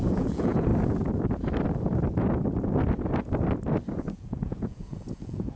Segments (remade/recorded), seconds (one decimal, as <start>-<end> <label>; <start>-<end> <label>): 0.0-0.7 remade; 0.7-4.1 recorded; 4.1-5.6 remade